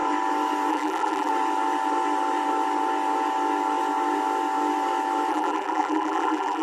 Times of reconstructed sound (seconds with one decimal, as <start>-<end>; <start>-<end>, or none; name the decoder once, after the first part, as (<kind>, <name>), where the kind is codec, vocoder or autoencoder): 0.7-1.3 (vocoder, BigVGAN v2); 5.3-6.6